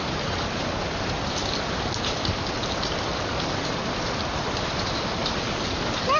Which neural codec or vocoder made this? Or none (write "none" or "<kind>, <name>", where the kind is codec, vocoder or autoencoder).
none